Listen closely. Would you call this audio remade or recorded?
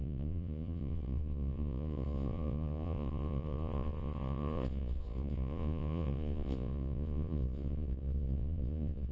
remade